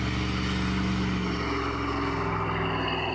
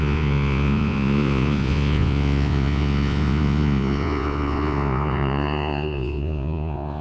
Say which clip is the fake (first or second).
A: second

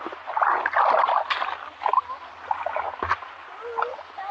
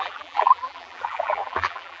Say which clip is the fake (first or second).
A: second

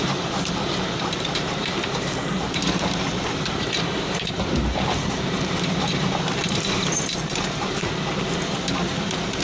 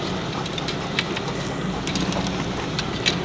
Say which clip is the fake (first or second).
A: first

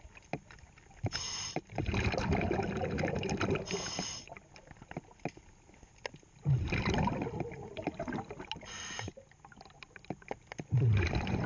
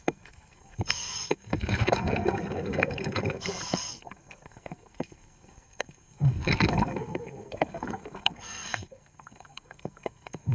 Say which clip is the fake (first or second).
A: second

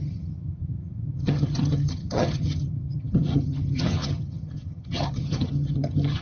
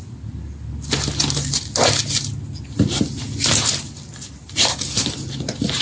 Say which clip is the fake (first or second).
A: first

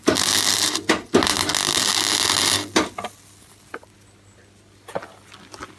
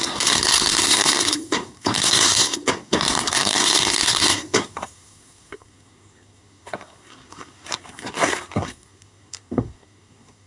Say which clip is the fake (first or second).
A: second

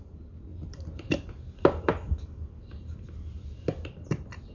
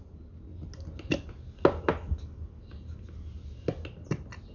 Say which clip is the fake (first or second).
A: first